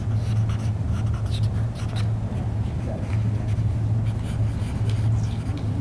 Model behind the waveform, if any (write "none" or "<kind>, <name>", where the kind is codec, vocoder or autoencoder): none